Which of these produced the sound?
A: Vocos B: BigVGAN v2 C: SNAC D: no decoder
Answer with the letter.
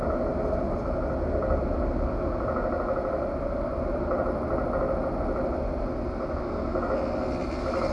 D